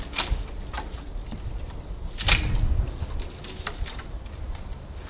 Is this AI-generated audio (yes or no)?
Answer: no